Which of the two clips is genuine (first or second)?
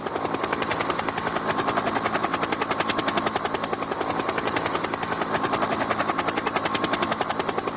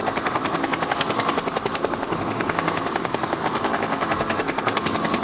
first